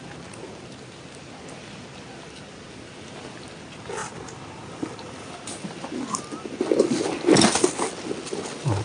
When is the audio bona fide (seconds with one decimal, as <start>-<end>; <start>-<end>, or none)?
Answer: 0.0-8.8